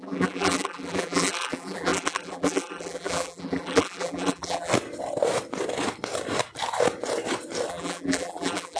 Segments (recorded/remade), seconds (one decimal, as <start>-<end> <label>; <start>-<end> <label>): 0.0-4.7 remade; 4.7-7.7 recorded; 7.7-8.8 remade

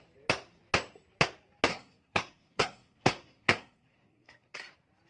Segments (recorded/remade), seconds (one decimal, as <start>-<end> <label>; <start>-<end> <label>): 0.0-1.7 recorded; 1.7-4.6 remade; 4.6-5.1 recorded

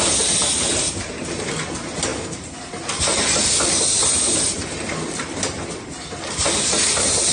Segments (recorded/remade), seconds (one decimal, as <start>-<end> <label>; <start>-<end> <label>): 0.0-7.3 recorded

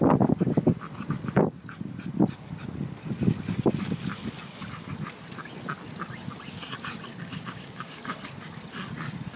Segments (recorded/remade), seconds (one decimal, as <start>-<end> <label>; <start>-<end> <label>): 0.0-7.1 recorded; 7.1-8.0 remade; 8.0-9.4 recorded